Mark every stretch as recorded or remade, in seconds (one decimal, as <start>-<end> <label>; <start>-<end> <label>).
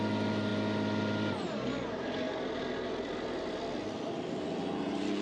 0.0-5.2 recorded